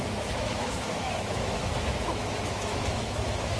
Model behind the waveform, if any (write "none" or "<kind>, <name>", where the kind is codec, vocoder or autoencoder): autoencoder, DAC-VAE